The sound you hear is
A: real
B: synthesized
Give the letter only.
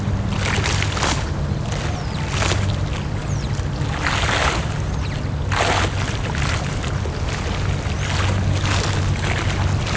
A